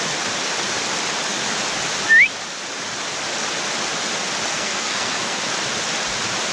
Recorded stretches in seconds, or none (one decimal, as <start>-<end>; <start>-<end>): 0.0-4.5; 5.5-6.5